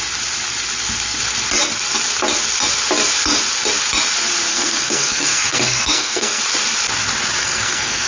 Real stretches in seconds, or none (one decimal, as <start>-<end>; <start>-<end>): 0.0-4.5; 6.4-7.4

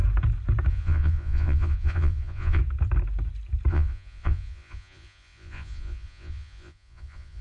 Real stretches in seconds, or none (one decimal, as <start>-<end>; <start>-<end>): 0.0-0.7; 2.6-3.7